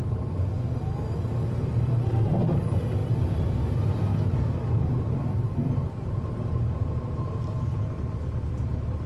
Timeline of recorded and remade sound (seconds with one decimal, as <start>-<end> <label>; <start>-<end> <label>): 0.0-9.1 recorded